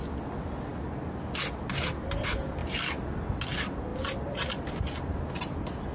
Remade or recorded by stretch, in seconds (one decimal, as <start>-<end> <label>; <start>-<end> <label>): 0.0-5.9 recorded